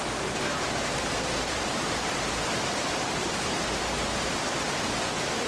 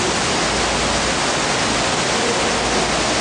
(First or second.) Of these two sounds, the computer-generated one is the first